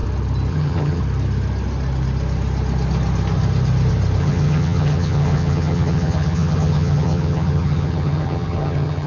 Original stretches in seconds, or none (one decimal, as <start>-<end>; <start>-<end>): 0.0-0.5; 1.0-4.2